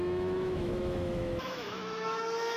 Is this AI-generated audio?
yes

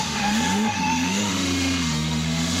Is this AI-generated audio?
yes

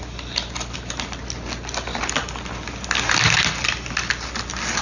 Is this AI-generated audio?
no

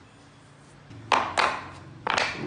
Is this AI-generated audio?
no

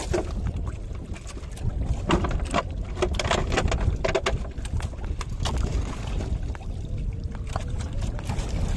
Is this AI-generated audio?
no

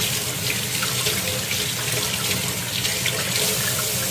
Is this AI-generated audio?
no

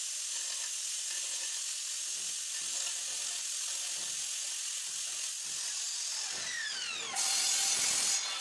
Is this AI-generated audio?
no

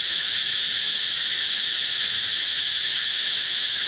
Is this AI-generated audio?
yes